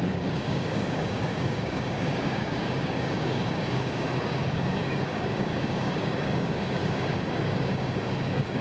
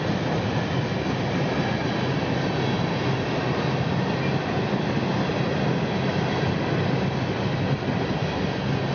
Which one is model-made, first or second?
first